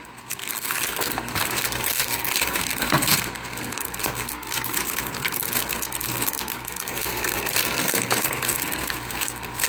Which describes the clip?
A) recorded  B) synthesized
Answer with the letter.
B